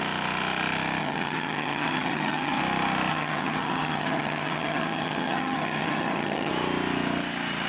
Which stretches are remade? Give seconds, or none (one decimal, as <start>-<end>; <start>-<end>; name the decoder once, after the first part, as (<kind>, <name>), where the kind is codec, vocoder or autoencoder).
1.0-2.6 (vocoder, HiFi-GAN); 3.1-6.5